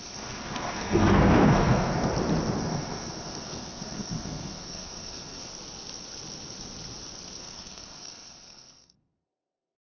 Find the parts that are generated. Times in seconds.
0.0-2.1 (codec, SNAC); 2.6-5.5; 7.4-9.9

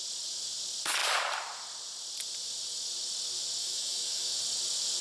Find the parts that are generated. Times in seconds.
3.6-4.3 (autoencoder, DAC-VAE)

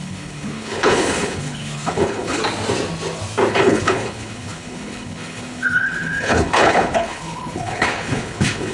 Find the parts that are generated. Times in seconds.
0.0-2.4 (codec, HILCodec); 3.5-8.7